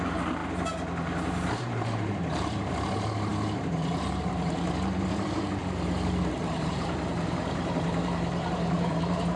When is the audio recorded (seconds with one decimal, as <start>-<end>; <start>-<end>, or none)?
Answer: 0.4-1.5; 5.6-6.6